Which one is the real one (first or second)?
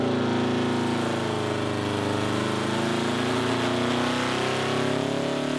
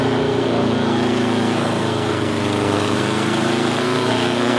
first